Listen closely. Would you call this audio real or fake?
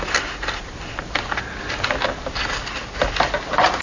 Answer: real